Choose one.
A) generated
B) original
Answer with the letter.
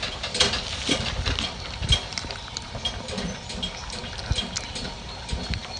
B